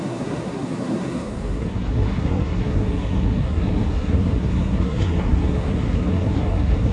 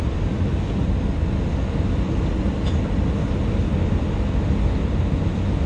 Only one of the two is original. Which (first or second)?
second